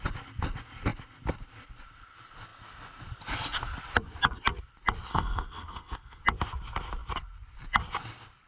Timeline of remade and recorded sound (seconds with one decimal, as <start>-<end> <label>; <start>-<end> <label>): 0.0-5.1 recorded; 5.1-6.2 remade; 6.2-8.5 recorded